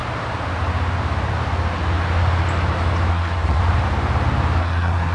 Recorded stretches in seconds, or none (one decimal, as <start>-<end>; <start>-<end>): 0.0-3.1; 3.6-4.6